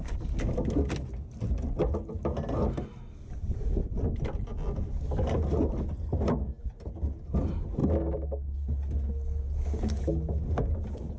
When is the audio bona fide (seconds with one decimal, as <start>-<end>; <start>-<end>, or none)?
0.0-11.2